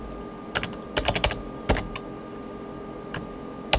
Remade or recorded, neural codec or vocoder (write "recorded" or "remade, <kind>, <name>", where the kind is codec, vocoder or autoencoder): recorded